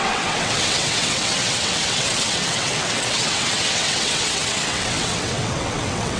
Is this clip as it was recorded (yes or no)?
no